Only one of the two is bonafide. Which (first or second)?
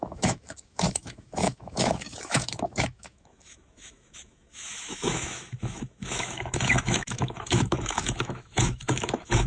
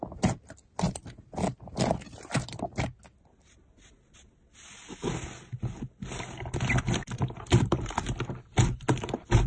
second